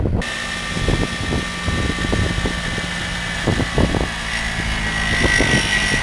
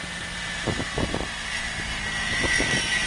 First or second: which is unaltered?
first